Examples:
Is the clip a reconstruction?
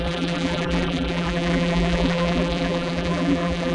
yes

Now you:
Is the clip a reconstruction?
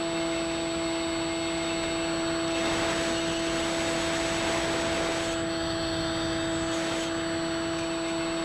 no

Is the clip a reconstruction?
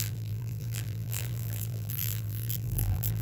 yes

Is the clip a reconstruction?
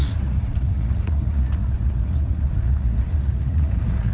yes